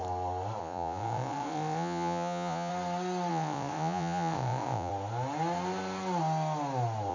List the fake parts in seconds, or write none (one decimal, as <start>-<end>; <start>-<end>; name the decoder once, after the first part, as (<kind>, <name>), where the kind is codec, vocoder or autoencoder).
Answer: 0.6-2.7 (vocoder, Vocos); 3.3-4.9